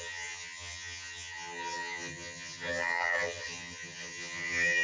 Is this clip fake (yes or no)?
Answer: yes